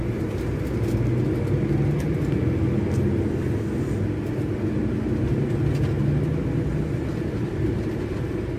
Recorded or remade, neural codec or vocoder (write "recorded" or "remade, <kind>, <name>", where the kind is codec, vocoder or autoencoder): recorded